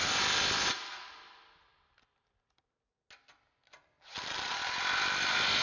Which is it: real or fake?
real